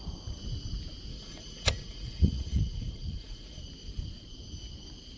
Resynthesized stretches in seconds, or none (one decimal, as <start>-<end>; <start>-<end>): 1.1-3.6